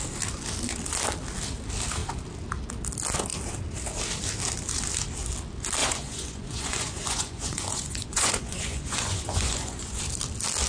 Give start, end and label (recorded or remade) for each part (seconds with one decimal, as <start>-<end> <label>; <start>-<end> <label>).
0.0-5.8 recorded; 5.8-10.0 remade; 10.0-10.7 recorded